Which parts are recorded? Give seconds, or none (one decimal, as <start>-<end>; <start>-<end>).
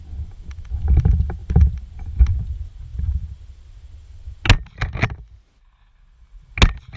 0.0-7.0